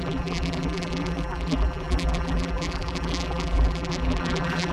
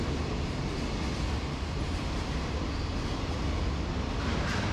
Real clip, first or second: second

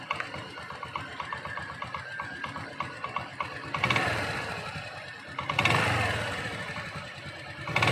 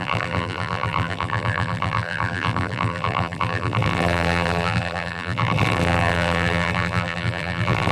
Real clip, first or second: first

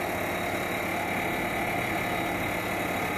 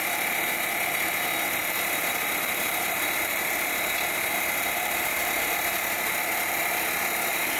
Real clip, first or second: first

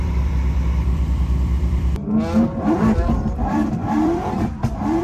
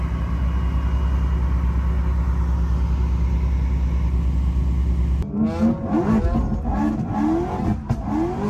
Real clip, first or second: second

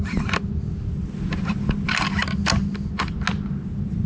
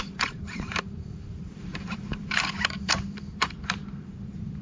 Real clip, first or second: first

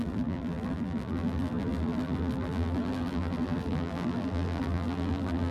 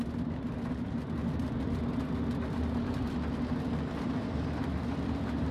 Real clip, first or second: second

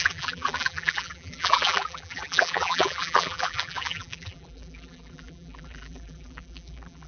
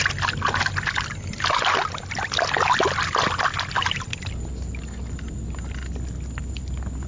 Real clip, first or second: second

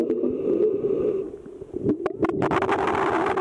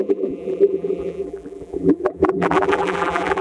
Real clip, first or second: first